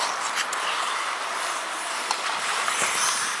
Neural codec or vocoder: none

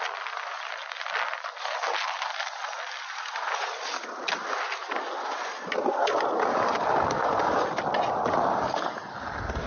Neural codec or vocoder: none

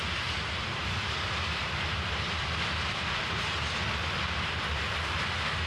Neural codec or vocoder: vocoder, BigVGAN v2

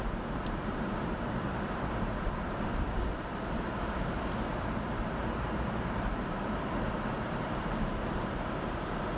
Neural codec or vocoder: vocoder, BigVGAN v2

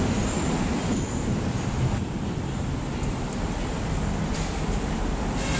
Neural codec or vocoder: vocoder, BigVGAN v2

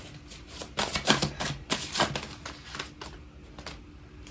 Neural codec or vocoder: none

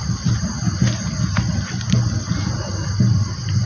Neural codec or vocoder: none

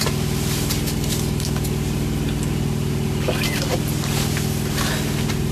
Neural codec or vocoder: none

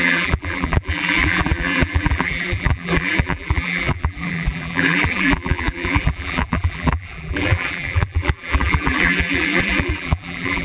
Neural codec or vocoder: vocoder, BigVGAN v2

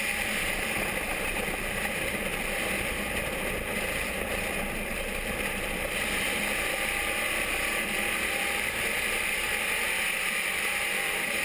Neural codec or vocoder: vocoder, BigVGAN v2